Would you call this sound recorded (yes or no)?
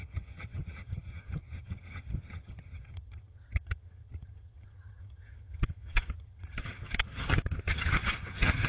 no